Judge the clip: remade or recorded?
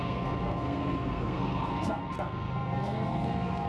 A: remade